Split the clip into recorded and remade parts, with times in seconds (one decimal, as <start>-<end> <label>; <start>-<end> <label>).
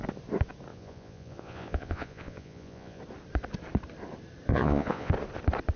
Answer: 0.0-0.7 recorded; 0.7-3.0 remade; 3.0-4.5 recorded; 4.5-5.1 remade; 5.1-5.8 recorded